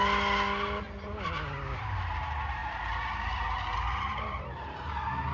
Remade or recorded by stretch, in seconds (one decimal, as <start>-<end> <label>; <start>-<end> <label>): 0.0-5.3 recorded